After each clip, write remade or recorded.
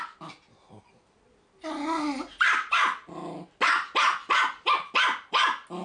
recorded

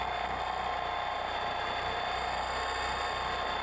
recorded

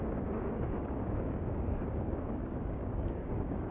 remade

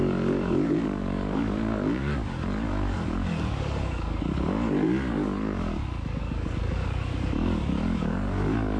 remade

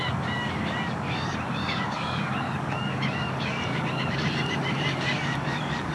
remade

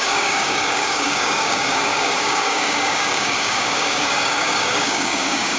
remade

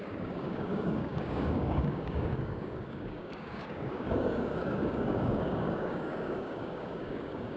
remade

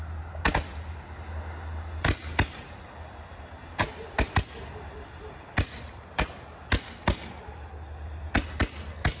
recorded